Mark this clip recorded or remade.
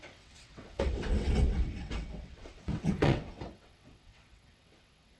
remade